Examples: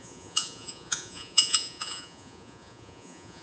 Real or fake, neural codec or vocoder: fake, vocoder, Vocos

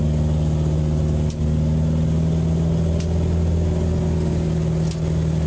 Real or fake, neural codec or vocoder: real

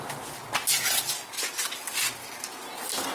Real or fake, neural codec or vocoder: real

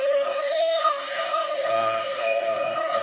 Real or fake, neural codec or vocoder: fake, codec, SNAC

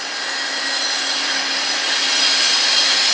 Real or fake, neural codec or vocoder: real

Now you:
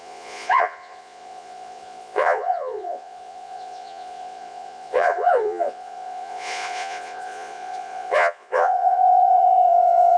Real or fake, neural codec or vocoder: fake, vocoder, Vocos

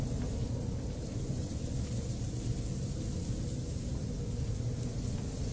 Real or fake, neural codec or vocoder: real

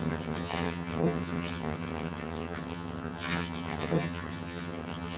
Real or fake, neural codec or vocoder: fake, vocoder, HiFi-GAN